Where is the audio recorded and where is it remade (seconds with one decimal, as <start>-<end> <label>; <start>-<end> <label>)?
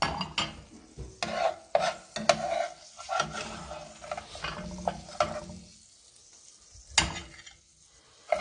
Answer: 0.0-8.4 recorded